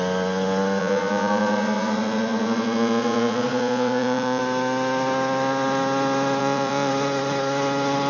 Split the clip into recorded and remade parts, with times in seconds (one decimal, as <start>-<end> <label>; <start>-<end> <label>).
0.0-0.8 recorded; 0.8-4.4 remade; 4.4-6.4 recorded; 6.4-6.9 remade; 6.9-8.1 recorded